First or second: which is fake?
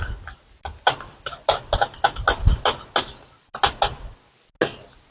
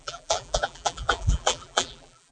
second